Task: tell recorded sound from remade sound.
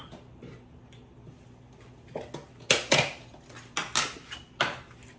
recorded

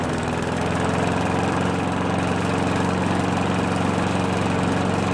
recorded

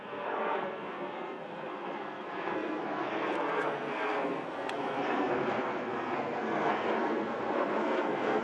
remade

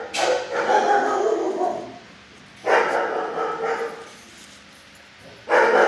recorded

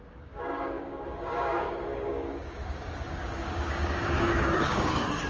remade